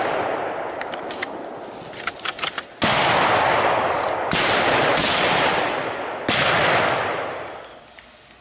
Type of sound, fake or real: real